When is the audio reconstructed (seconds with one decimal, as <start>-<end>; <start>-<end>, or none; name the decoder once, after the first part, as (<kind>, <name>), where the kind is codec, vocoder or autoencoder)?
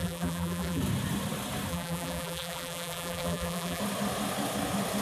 0.0-0.8 (vocoder, BigVGAN v2); 1.7-3.8